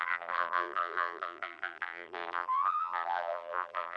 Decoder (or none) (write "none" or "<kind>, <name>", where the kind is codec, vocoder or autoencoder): vocoder, BigVGAN v2